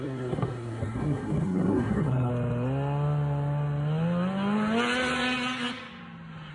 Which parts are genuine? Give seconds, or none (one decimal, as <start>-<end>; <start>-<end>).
2.3-6.5